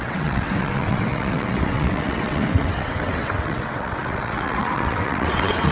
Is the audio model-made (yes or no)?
yes